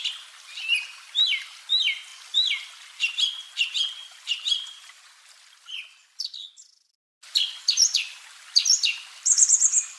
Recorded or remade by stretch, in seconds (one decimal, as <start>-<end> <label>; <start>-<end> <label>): 0.0-4.0 recorded; 4.0-5.1 remade; 5.1-10.0 recorded